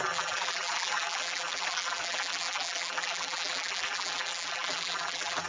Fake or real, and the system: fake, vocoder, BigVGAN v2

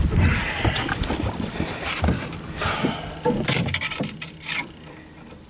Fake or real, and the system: fake, vocoder, BigVGAN v2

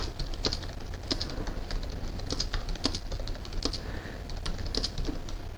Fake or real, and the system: real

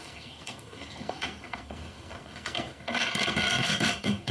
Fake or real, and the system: fake, codec, SNAC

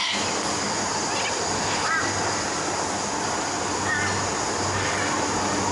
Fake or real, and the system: real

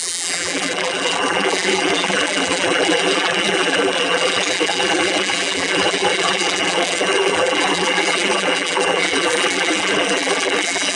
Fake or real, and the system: fake, vocoder, BigVGAN v2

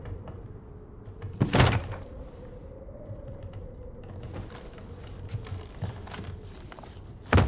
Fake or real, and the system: real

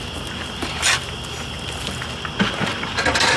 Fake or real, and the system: real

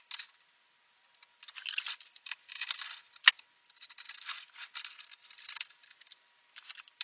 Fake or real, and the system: real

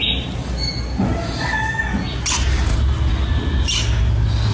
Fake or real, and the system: real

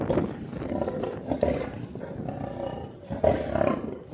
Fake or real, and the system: real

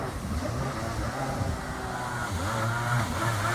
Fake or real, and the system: real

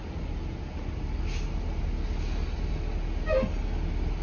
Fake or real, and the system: real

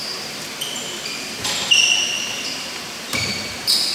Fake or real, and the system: real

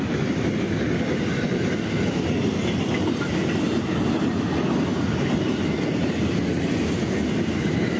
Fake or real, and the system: real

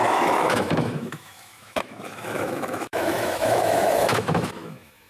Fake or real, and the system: fake, autoencoder, DAC-VAE